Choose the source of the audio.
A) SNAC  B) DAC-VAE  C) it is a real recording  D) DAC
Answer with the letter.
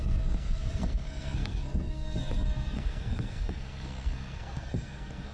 A